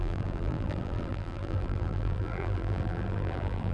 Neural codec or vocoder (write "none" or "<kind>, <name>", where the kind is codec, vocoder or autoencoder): vocoder, BigVGAN v2